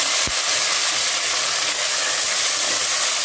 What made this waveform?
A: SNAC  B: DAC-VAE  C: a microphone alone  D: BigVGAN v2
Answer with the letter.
C